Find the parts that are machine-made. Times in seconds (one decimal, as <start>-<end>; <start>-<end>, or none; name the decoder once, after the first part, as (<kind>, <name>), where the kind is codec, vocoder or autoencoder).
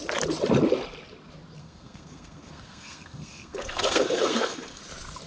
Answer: 1.6-4.8 (codec, SNAC)